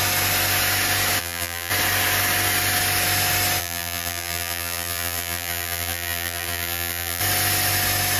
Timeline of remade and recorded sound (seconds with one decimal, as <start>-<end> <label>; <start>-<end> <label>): 0.0-1.2 recorded; 1.2-1.7 remade; 1.7-3.6 recorded; 3.6-7.2 remade; 7.2-8.2 recorded